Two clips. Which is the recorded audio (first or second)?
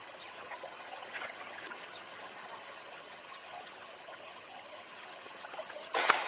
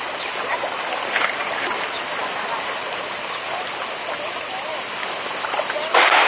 second